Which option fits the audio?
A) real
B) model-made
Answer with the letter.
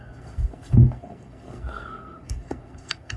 B